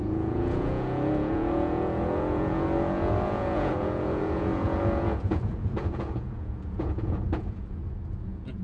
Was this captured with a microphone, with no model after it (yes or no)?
no